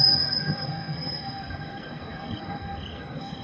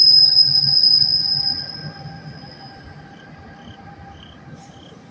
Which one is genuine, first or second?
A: second